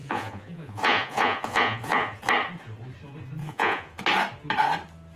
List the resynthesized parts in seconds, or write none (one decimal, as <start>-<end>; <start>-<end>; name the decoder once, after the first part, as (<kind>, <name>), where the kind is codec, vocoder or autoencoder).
0.0-2.2 (vocoder, Vocos); 3.4-4.0